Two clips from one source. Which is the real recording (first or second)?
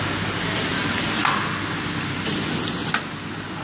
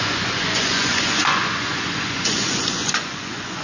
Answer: first